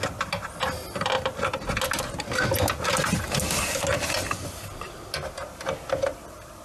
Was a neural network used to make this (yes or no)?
no